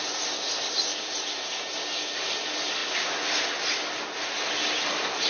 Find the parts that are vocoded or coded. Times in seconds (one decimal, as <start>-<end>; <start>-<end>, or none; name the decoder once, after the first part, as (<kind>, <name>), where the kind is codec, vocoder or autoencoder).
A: 0.9-1.7 (vocoder, BigVGAN v2)